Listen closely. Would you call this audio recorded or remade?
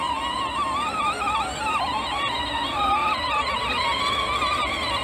recorded